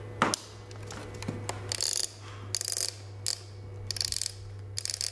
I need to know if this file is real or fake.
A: real